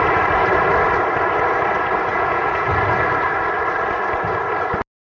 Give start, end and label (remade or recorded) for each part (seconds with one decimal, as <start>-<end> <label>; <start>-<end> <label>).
0.0-2.1 recorded; 2.1-2.7 remade; 2.7-5.0 recorded